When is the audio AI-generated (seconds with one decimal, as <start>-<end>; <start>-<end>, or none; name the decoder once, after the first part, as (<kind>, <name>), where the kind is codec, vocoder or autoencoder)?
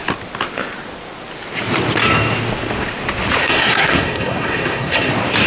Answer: 3.4-5.1 (codec, SNAC)